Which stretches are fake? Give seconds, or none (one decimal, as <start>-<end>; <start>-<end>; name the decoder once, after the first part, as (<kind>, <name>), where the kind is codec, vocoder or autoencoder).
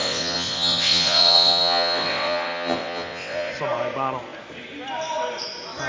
0.0-3.5 (vocoder, WaveNeXt)